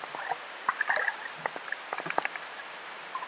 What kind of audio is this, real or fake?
real